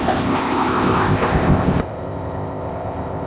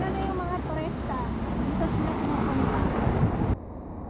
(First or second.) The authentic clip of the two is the second